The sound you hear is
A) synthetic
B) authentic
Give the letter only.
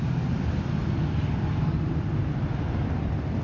B